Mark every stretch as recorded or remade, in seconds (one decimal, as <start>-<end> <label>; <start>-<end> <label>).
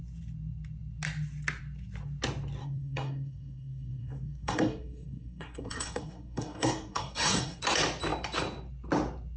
0.0-2.6 recorded; 2.6-7.6 remade; 7.6-9.4 recorded